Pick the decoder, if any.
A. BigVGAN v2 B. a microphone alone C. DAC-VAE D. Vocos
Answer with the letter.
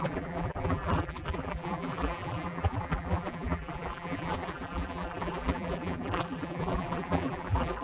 A